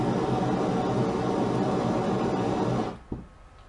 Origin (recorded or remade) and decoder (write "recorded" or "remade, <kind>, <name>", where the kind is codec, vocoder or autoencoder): recorded